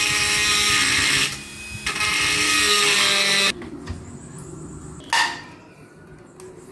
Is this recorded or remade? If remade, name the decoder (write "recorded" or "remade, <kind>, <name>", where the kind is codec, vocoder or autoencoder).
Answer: recorded